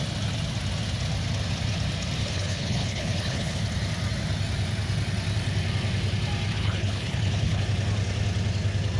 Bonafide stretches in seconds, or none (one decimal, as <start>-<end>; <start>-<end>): 0.0-2.2; 3.6-6.5; 7.6-9.0